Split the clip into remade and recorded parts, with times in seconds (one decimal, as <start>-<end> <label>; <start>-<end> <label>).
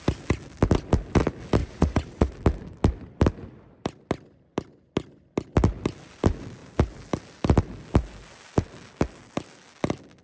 0.0-1.6 recorded; 1.6-2.3 remade; 2.3-10.2 recorded